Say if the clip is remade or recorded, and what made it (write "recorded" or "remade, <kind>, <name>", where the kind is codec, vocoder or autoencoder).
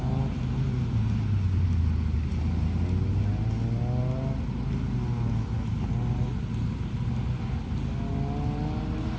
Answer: recorded